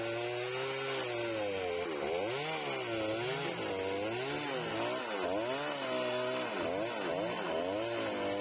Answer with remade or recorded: recorded